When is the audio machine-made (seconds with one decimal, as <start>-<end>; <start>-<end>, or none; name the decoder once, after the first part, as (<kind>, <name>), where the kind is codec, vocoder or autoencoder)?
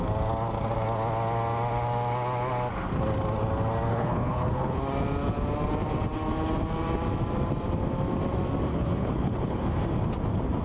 3.9-4.8 (codec, HILCodec); 8.7-9.6